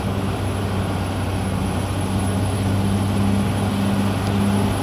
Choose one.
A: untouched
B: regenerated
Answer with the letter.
A